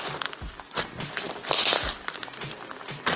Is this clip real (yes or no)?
yes